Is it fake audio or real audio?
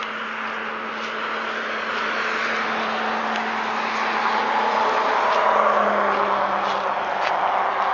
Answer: real